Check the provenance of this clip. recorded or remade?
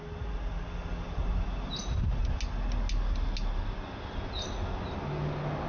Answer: recorded